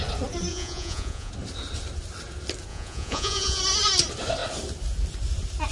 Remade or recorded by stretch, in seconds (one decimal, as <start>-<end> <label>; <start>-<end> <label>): 0.0-0.5 recorded; 0.5-1.3 remade; 1.3-2.7 recorded; 2.7-3.6 remade; 3.6-5.7 recorded